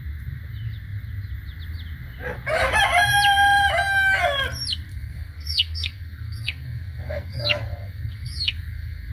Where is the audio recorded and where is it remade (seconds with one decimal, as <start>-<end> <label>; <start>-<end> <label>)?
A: 0.0-4.9 recorded; 4.9-9.1 remade